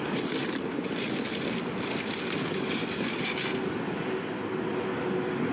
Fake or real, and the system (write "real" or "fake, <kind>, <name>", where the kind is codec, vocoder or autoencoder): real